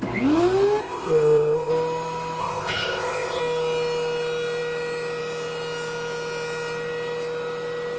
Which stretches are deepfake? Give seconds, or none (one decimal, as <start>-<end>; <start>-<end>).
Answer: 0.8-1.7; 2.4-3.4